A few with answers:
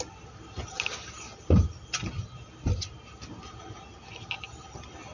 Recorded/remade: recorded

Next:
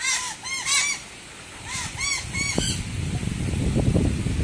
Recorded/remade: recorded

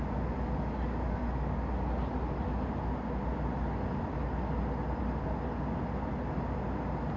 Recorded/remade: recorded